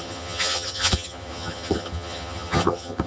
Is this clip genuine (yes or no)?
no